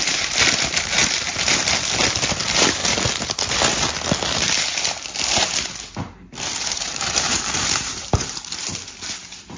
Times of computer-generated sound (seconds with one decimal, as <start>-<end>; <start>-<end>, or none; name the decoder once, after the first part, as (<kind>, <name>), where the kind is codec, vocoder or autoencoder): 0.0-1.0 (vocoder, BigVGAN v2); 2.3-2.8; 6.6-9.6